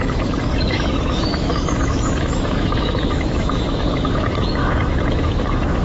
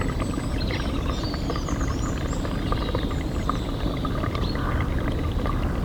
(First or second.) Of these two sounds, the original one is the second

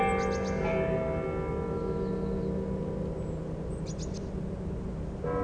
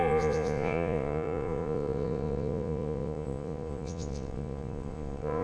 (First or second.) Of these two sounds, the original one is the first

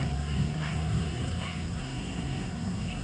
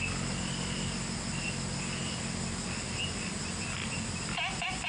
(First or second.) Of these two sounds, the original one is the second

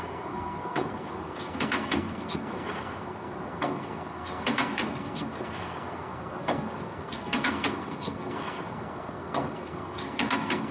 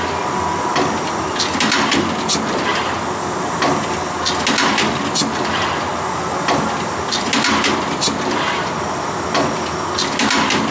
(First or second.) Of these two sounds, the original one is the second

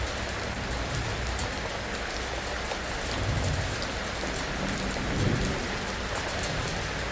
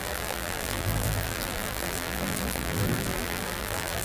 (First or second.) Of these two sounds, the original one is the first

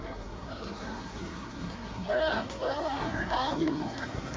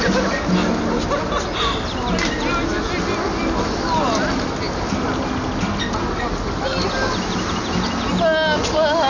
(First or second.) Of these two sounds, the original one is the second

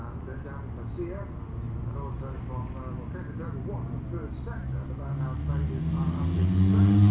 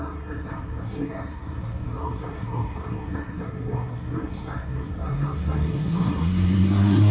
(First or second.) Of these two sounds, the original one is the first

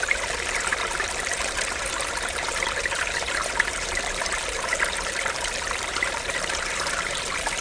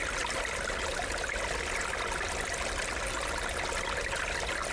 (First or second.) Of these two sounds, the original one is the second